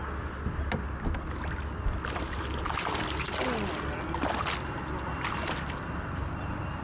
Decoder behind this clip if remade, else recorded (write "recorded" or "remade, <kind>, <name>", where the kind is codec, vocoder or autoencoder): recorded